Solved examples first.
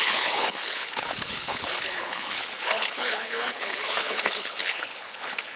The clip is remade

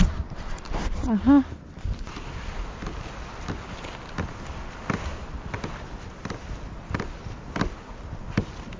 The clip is recorded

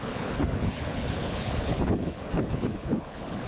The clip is remade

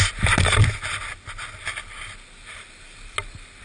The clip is recorded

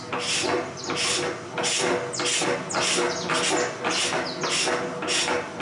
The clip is recorded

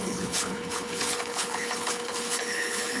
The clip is remade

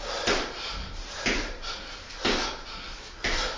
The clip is recorded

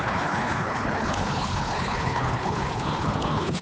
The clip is remade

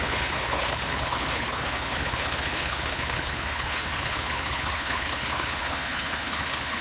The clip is remade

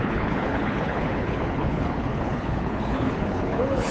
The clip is remade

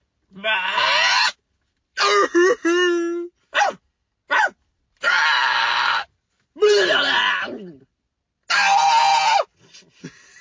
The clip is recorded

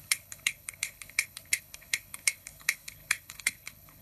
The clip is remade